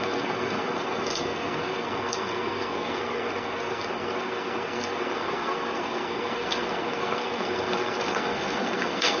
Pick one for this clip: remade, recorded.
remade